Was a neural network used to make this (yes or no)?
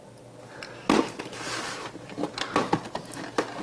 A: no